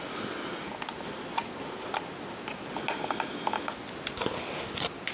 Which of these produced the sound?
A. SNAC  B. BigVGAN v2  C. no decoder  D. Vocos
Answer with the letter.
C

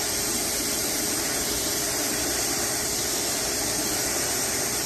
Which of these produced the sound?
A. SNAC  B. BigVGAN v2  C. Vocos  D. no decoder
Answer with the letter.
B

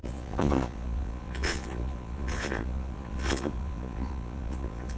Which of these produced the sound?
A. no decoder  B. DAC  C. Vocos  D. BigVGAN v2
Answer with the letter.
C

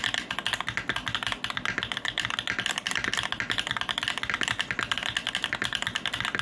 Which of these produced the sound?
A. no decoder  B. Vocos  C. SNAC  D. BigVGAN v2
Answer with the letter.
A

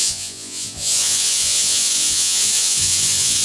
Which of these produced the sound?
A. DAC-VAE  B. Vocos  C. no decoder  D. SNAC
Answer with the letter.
B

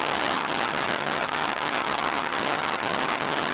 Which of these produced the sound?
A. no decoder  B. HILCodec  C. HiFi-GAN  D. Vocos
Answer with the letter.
C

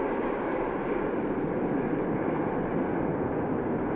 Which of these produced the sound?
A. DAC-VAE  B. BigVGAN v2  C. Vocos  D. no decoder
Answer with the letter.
D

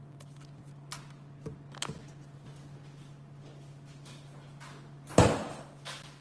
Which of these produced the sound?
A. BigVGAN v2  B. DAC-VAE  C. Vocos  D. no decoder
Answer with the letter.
D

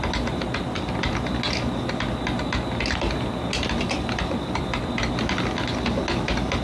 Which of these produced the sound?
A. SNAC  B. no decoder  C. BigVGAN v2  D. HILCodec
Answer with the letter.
B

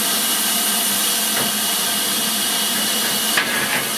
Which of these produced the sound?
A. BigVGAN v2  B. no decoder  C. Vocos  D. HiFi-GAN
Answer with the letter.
B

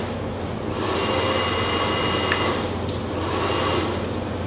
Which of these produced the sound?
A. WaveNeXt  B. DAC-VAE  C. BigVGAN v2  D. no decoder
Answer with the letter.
D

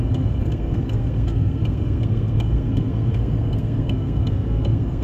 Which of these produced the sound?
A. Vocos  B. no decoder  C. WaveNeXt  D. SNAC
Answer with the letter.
D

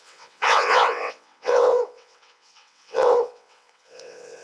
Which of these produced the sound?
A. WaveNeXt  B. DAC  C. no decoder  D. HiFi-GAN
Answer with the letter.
A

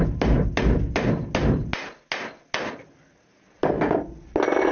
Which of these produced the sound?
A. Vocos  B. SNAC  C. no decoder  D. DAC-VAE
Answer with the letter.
C